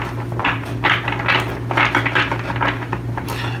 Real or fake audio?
real